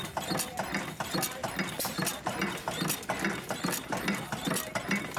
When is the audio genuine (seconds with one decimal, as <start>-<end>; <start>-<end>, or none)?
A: 0.0-5.2